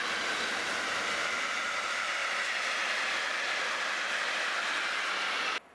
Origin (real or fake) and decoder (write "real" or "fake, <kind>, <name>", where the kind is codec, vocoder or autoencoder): real